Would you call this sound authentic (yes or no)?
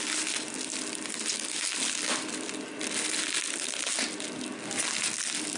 yes